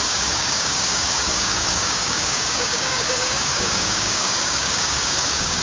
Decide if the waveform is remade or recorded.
remade